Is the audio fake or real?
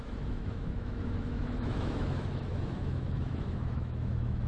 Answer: fake